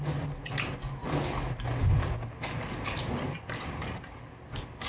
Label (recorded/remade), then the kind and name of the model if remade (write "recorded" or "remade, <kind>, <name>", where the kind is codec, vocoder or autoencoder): recorded